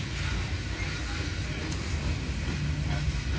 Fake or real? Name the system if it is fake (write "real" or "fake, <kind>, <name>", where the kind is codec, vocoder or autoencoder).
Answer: real